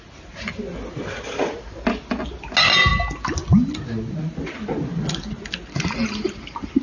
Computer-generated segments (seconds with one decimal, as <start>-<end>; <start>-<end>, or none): none

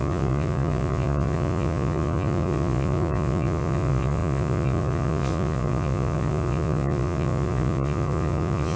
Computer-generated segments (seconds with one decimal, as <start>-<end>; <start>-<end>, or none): 0.0-8.8

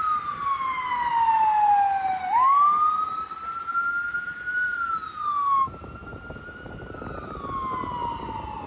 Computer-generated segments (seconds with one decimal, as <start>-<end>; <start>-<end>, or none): none

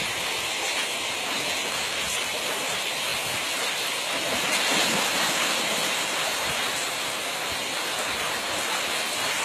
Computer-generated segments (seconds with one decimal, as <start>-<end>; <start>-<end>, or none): none

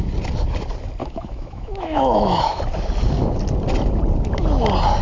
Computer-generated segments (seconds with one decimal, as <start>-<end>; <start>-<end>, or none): 1.0-2.6

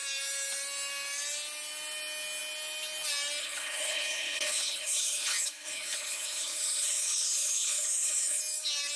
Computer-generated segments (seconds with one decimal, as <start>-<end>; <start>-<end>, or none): 3.4-8.4

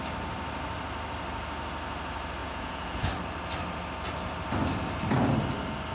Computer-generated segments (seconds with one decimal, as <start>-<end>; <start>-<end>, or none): 2.4-3.1

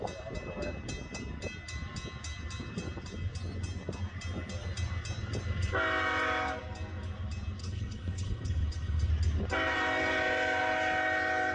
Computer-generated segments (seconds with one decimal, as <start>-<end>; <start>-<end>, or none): 7.6-9.1